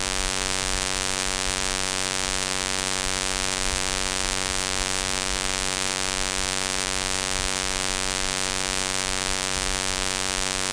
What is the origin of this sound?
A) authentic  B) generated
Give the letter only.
A